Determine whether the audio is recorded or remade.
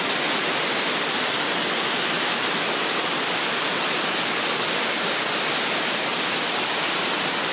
recorded